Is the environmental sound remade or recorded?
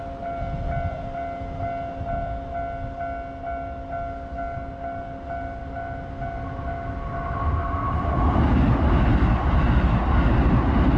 recorded